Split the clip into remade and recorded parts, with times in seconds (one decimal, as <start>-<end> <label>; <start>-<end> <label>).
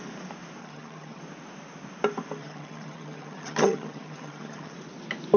0.0-0.6 recorded; 0.6-1.2 remade; 1.2-2.4 recorded; 2.4-4.7 remade; 4.7-5.4 recorded